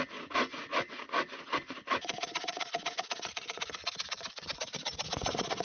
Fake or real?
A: fake